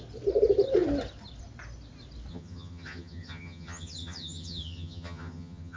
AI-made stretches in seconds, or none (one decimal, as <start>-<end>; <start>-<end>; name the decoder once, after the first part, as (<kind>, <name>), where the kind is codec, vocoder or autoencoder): 2.3-5.8 (vocoder, HiFi-GAN)